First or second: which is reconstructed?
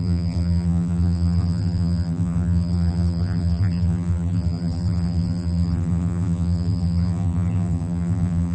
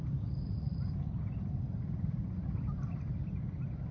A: first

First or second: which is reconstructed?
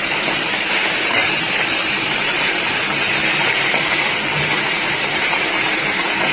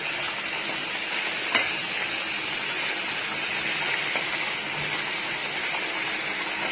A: first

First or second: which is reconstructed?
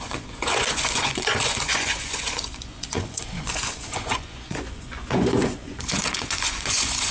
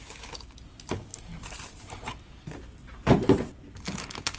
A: first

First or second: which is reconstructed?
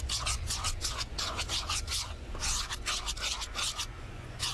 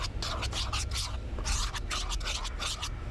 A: first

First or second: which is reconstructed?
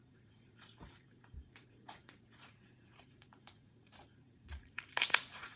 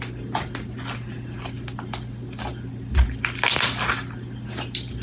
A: first